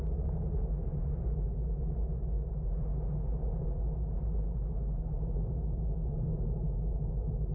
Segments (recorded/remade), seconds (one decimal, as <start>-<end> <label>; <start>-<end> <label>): 0.0-7.5 recorded